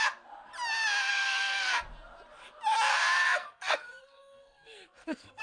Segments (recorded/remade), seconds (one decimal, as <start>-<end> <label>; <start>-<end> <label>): 0.0-1.1 recorded; 1.1-1.7 remade; 1.7-2.9 recorded; 2.9-5.4 remade